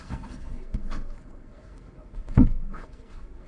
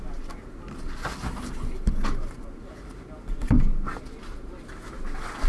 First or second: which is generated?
first